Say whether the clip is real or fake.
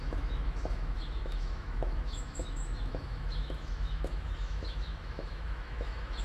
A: fake